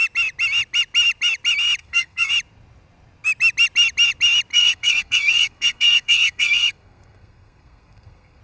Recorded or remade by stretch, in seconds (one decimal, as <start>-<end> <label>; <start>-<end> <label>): 0.0-1.8 recorded; 1.8-2.3 remade; 2.3-4.5 recorded; 4.5-8.4 remade